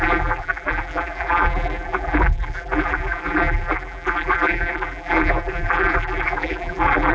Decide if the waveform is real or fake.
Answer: fake